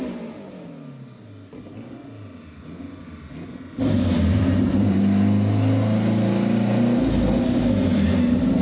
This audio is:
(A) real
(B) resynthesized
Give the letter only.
A